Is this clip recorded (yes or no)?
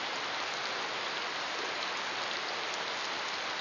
yes